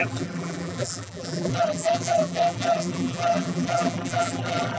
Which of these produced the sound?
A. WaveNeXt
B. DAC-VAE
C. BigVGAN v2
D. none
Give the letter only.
C